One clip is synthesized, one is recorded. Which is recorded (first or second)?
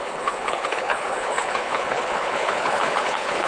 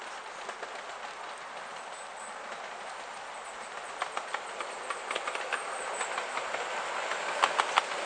second